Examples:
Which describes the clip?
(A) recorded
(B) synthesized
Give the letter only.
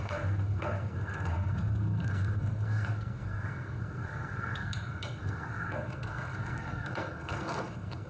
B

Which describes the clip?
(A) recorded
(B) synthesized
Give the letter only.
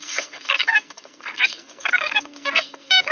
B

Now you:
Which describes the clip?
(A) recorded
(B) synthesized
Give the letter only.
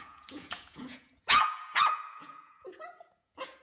B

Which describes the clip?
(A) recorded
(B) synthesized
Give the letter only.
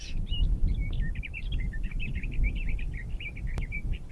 B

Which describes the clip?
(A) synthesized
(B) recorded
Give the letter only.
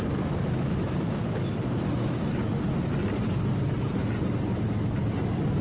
B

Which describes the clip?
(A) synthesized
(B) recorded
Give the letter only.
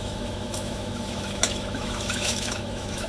A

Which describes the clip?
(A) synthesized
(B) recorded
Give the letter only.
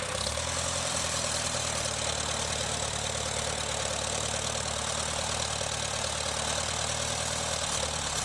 B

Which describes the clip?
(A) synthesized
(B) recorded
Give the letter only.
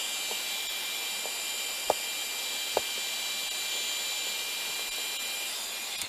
B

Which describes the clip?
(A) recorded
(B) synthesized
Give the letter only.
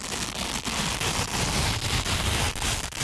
A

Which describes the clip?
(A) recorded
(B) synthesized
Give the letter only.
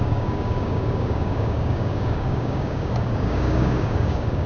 B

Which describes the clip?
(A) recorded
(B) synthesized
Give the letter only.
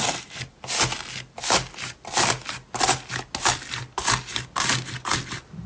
A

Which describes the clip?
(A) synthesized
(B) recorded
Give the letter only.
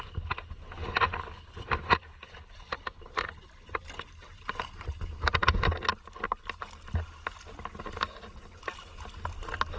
B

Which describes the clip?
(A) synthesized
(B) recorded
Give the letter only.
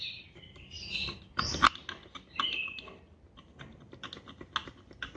B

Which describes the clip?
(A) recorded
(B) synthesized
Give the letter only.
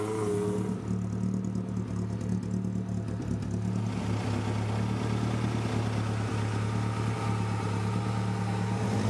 A